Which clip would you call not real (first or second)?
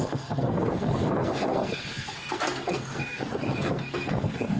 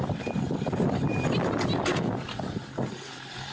first